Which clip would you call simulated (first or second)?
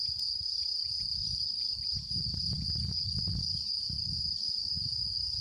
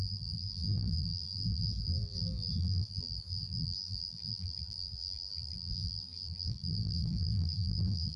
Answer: second